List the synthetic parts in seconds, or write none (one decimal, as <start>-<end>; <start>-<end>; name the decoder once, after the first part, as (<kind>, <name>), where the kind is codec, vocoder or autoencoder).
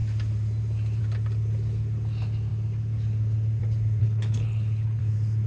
4.0-5.0 (codec, HILCodec)